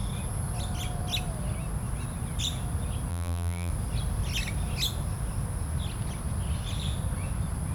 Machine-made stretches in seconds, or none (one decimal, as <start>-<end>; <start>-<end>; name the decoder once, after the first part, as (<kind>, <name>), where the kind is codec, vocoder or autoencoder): 3.1-3.7 (vocoder, BigVGAN v2)